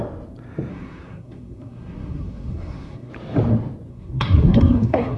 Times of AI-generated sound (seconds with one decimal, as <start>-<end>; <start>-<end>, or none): 0.7-3.1; 3.9-5.2